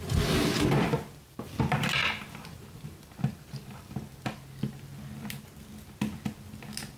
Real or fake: real